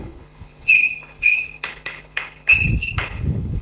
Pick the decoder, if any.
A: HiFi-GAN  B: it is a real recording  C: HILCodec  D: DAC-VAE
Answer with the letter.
C